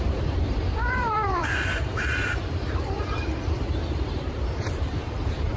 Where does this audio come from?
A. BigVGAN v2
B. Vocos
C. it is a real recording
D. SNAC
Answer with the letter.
A